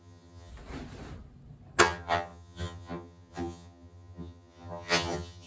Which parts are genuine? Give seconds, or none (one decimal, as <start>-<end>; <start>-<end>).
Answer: 0.5-1.8